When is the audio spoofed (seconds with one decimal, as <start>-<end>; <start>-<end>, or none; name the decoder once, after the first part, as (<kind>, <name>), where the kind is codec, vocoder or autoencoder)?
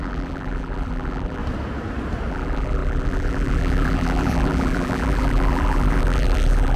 0.0-1.4 (vocoder, BigVGAN v2); 2.3-6.8